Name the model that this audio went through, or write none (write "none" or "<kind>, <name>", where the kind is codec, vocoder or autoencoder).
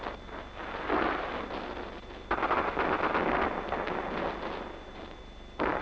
none